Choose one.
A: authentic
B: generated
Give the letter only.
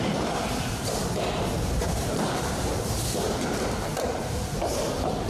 B